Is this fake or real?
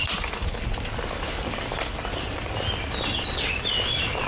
real